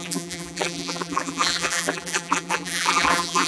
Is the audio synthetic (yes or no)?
yes